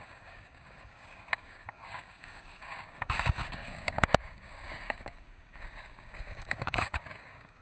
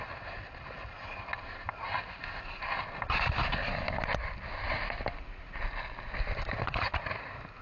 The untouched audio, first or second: second